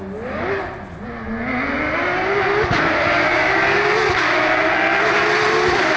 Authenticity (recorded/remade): recorded